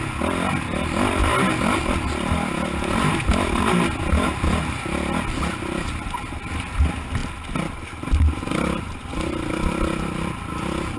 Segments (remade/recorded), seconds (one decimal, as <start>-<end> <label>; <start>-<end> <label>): 0.0-11.0 recorded